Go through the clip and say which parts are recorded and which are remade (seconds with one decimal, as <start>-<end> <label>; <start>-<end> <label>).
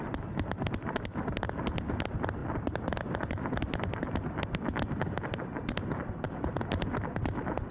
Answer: 0.0-7.7 recorded